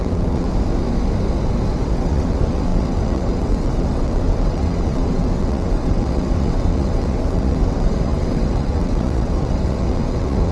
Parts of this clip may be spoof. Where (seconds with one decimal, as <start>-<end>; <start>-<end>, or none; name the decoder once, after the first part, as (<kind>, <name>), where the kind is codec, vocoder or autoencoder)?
0.0-0.5 (vocoder, WaveNeXt); 1.7-10.5